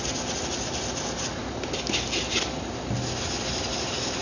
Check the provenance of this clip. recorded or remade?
recorded